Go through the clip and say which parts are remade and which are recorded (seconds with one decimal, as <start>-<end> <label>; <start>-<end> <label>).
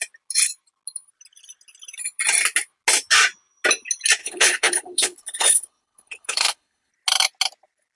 0.0-4.2 recorded; 4.2-6.9 remade; 6.9-8.0 recorded